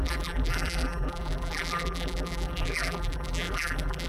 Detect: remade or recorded remade